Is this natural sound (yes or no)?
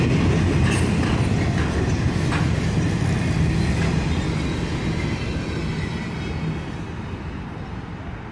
yes